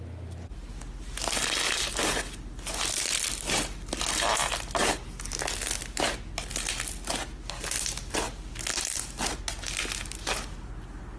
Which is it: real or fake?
real